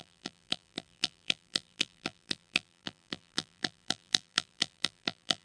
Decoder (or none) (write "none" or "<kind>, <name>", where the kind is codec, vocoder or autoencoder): vocoder, BigVGAN v2